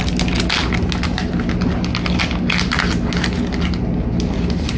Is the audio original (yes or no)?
yes